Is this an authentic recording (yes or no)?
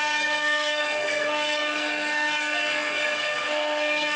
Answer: no